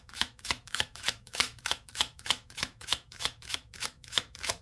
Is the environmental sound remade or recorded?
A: remade